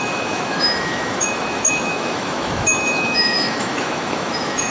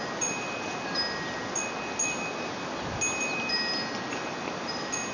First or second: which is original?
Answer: second